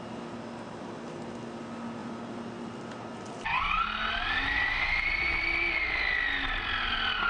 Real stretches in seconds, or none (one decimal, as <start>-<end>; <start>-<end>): 0.0-2.0; 3.8-7.3

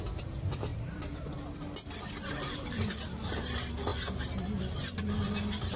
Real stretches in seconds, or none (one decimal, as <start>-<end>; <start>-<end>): 0.0-0.7; 2.3-5.8

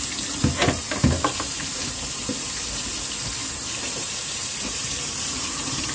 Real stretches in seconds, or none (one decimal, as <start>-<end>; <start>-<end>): 0.0-3.4

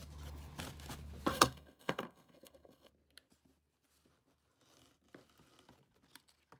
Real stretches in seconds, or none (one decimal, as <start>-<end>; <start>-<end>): 0.0-1.3; 2.9-6.6

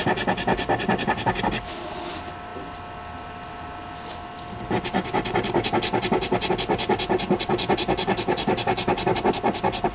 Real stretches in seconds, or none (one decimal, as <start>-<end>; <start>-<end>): 0.0-9.9

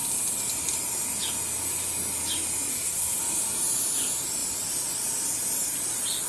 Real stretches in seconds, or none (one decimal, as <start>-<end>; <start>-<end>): 0.0-2.7; 3.2-6.3

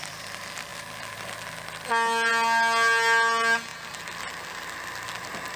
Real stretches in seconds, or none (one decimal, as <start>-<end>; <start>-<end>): 0.0-5.6